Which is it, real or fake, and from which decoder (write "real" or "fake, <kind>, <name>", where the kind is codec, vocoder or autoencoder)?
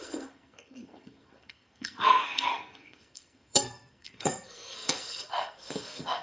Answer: fake, codec, SNAC